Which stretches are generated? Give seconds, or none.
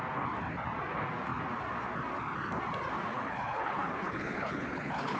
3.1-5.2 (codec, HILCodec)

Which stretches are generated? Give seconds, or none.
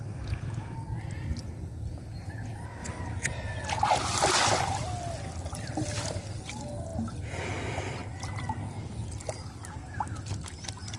none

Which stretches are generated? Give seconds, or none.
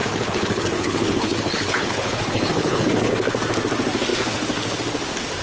0.0-3.1 (codec, HILCodec)